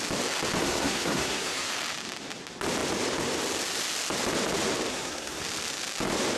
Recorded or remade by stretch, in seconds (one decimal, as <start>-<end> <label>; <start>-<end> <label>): 0.0-0.6 recorded; 0.6-1.7 remade; 1.7-4.9 recorded; 4.9-5.4 remade; 5.4-6.4 recorded